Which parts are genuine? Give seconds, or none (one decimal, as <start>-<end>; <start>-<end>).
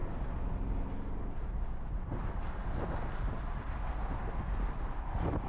0.0-5.5